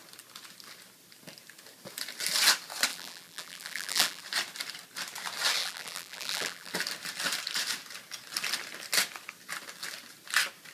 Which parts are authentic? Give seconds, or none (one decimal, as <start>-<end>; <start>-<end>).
0.0-2.9; 4.2-5.6; 6.7-10.7

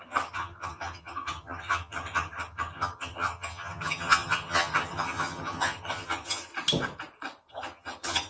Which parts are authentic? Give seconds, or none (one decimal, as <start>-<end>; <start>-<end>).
6.5-7.5

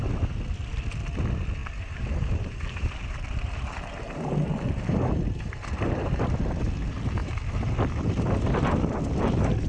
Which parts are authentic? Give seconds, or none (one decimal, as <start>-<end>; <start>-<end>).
0.0-1.6; 6.2-9.7

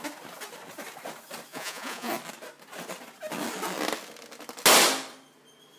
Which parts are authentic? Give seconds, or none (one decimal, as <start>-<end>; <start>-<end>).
0.0-1.5; 2.1-5.8

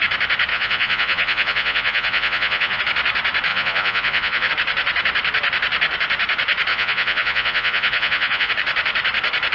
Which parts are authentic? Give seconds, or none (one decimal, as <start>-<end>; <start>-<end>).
0.0-0.5; 2.8-3.5; 4.5-6.7; 8.5-9.5